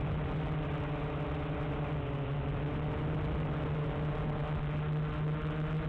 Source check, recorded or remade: recorded